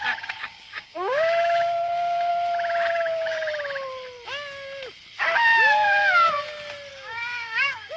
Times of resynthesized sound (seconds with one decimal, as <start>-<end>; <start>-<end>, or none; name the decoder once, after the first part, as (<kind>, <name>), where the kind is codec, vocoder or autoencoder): 0.0-2.3 (codec, DAC); 2.9-3.5; 6.9-8.0

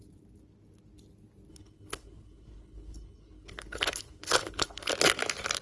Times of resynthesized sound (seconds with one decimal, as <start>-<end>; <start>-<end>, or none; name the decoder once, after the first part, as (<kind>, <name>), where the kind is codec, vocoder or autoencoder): 1.5-4.9 (codec, HILCodec)

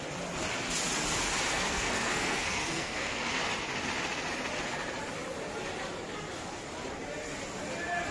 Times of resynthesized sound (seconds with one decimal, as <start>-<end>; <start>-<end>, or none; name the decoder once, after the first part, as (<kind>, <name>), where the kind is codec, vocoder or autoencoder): 1.5-3.3 (codec, SNAC)

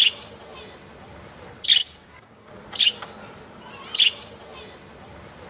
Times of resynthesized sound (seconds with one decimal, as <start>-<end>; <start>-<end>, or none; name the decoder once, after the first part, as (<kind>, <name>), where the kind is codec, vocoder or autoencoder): 1.8-2.5 (codec, DAC)

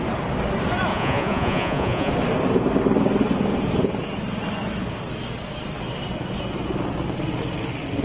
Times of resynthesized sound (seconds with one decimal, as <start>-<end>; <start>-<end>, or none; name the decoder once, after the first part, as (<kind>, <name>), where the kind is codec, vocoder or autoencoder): 0.9-2.1 (vocoder, Vocos)